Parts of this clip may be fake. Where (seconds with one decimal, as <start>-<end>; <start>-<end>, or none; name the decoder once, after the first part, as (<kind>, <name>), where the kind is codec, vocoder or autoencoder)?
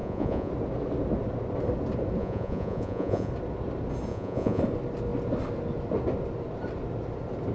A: 0.0-0.5 (vocoder, Vocos); 2.2-3.3; 4.1-4.6